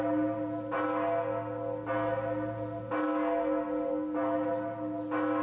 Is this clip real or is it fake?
real